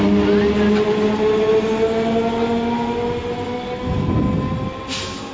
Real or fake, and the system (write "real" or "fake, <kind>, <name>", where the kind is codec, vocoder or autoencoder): real